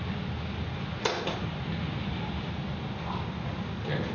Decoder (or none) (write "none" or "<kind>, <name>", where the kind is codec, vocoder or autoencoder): none